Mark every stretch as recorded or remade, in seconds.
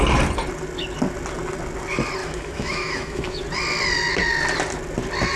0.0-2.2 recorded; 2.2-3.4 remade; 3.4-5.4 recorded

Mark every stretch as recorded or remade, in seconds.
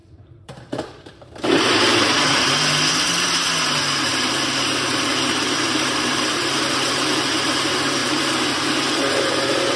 0.0-2.4 remade; 2.4-4.1 recorded; 4.1-7.1 remade; 7.1-8.0 recorded; 8.0-8.7 remade; 8.7-9.8 recorded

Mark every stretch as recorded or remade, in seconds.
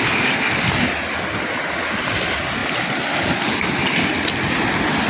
0.0-5.1 recorded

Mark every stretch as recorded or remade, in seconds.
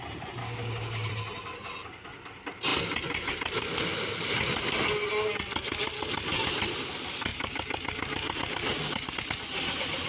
0.0-0.4 recorded; 0.4-1.1 remade; 1.1-10.1 recorded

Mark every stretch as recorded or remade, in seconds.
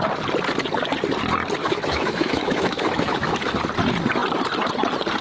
0.0-1.6 recorded; 1.6-3.5 remade; 3.5-5.2 recorded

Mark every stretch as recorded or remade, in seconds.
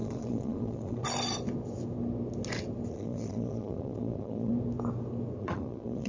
0.0-1.0 remade; 1.0-2.9 recorded; 2.9-4.5 remade; 4.5-5.4 recorded; 5.4-6.1 remade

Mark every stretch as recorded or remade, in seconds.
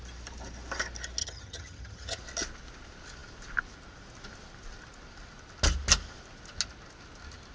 0.0-1.2 recorded; 1.2-2.2 remade; 2.2-7.5 recorded